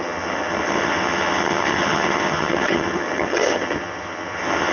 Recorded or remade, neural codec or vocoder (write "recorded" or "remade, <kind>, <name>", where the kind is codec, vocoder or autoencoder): remade, vocoder, HiFi-GAN